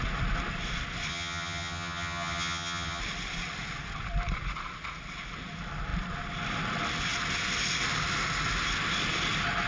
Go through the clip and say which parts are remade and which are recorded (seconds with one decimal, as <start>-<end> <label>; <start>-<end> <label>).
0.0-1.1 recorded; 1.1-3.0 remade; 3.0-9.7 recorded